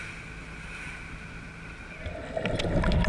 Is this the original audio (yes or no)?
yes